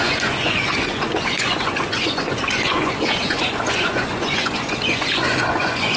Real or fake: fake